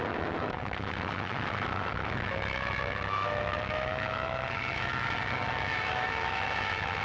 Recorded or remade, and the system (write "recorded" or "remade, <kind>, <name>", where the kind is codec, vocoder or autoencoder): remade, autoencoder, DAC-VAE